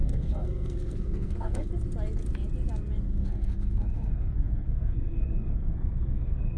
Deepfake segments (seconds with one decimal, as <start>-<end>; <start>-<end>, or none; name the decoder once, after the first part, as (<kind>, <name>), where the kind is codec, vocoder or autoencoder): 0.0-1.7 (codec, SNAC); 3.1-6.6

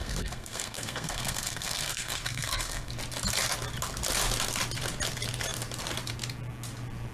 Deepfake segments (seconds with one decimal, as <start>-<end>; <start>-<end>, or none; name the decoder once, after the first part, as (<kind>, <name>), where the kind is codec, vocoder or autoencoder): 0.0-2.9 (codec, SNAC)

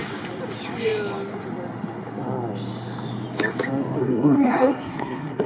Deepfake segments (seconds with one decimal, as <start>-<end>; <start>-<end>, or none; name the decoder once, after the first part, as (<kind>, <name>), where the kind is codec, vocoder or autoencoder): 4.0-5.5 (codec, SNAC)